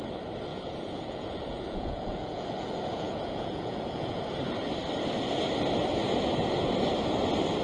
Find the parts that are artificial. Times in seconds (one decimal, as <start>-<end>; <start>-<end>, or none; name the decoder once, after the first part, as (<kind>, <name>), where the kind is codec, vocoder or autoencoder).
0.5-4.2 (vocoder, Vocos)